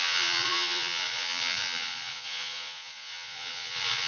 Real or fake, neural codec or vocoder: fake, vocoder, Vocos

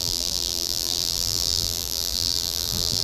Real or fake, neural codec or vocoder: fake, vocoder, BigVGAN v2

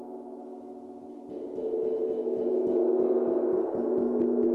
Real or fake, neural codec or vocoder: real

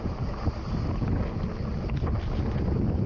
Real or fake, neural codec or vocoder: real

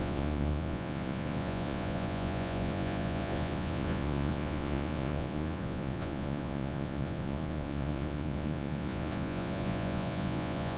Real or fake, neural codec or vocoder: fake, vocoder, Vocos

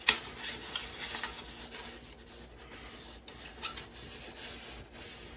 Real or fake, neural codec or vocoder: real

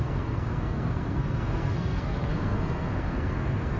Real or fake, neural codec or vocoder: fake, codec, SNAC